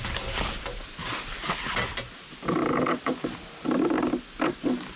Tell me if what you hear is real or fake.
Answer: real